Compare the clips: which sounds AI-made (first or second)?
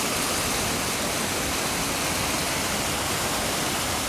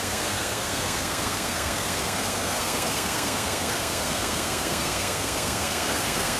second